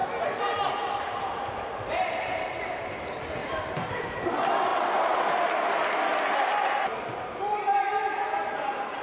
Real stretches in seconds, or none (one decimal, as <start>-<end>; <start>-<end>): 0.0-1.0; 4.7-9.0